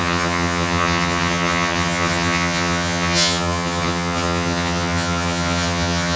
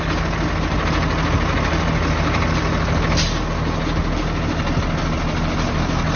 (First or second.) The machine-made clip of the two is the first